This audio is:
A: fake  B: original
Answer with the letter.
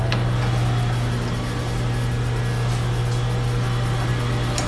B